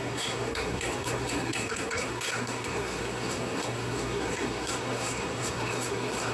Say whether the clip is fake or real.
fake